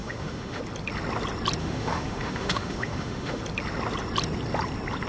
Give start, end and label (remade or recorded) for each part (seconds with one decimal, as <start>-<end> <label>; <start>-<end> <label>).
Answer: 0.0-0.6 remade; 0.6-1.6 recorded; 1.6-3.4 remade; 3.4-5.1 recorded